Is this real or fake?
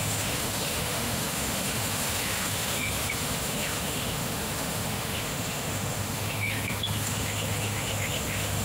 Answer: fake